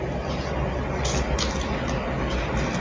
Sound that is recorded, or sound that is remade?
recorded